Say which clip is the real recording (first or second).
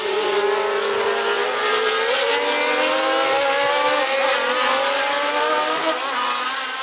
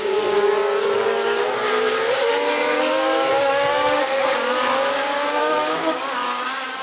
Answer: first